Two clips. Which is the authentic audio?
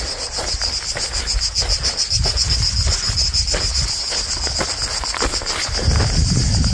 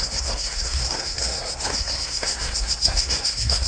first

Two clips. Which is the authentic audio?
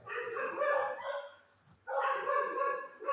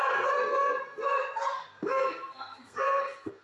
first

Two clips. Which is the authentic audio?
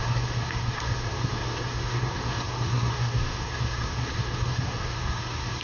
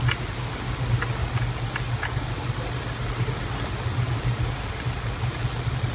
second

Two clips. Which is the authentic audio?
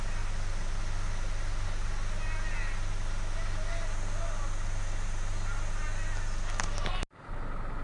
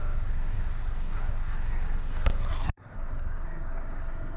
first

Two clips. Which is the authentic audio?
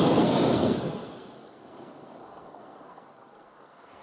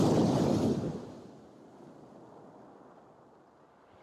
second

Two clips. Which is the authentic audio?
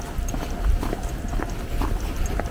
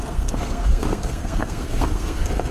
first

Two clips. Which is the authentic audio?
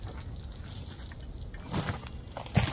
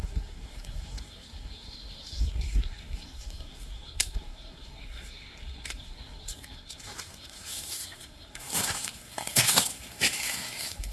first